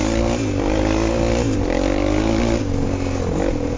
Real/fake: real